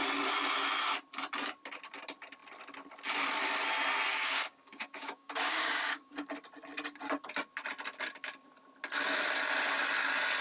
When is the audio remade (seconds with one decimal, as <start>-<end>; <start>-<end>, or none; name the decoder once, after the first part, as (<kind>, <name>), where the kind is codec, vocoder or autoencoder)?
4.1-6.2 (codec, DAC)